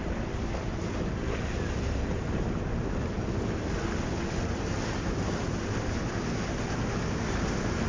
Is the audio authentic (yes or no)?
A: yes